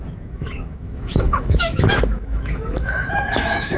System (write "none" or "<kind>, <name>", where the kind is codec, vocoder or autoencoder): autoencoder, DAC-VAE